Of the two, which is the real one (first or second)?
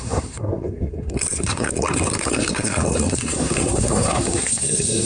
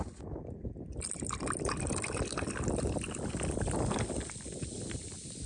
second